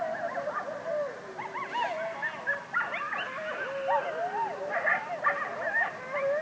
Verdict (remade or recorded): recorded